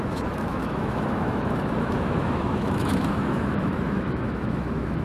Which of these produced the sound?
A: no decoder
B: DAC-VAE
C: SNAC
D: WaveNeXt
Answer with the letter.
B